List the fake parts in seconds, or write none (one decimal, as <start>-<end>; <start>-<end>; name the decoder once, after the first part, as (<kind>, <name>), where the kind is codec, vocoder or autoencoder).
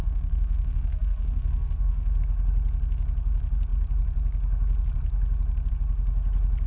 0.0-2.2 (codec, SNAC)